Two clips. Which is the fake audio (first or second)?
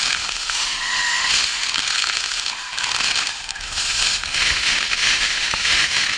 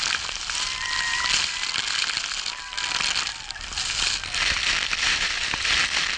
first